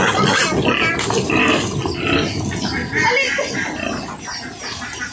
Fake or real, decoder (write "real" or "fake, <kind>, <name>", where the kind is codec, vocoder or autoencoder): real